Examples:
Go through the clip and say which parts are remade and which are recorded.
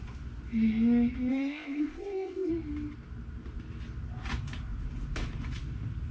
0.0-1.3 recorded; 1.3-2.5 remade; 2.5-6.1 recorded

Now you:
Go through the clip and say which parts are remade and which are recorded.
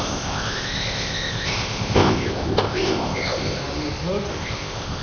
0.0-3.6 remade; 3.6-4.3 recorded; 4.3-5.0 remade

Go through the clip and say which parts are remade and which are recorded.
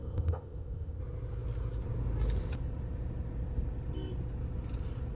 0.0-1.0 remade; 1.0-5.1 recorded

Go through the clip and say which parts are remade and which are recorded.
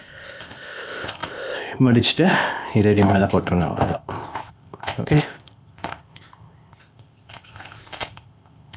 0.0-8.8 remade